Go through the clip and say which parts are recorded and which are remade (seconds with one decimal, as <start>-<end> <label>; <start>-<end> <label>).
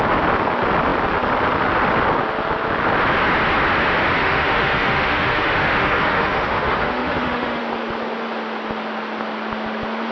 0.0-4.2 recorded; 4.2-7.6 remade; 7.6-10.1 recorded